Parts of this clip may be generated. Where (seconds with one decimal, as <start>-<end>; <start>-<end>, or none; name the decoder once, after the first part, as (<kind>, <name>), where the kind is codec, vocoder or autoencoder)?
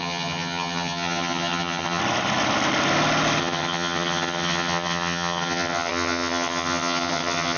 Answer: 0.0-2.0 (vocoder, HiFi-GAN); 3.4-7.6